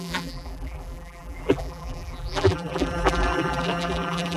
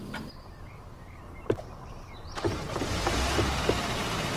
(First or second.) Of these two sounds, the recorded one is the second